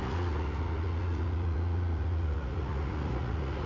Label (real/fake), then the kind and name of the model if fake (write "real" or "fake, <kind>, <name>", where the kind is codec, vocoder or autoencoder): fake, vocoder, Vocos